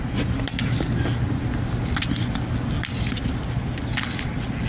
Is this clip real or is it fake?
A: real